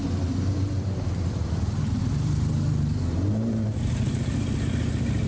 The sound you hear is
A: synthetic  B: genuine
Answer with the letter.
A